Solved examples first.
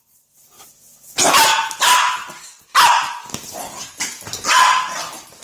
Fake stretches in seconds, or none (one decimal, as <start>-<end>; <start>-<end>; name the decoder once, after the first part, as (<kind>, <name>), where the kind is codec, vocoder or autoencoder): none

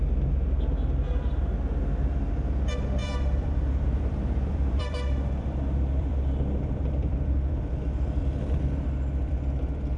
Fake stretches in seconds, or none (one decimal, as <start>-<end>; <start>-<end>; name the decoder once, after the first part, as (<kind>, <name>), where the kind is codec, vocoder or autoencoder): 3.0-7.6 (vocoder, BigVGAN v2); 8.2-9.3

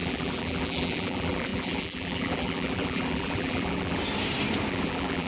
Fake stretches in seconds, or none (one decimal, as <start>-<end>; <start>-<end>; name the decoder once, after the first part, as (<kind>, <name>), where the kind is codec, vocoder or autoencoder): 0.0-4.0 (vocoder, BigVGAN v2); 4.7-5.3

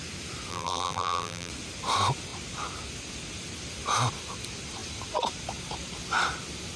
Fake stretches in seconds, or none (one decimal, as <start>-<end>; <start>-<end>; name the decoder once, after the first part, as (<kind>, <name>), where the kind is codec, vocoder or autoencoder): 0.5-1.5 (vocoder, BigVGAN v2)